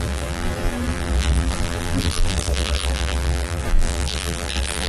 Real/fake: fake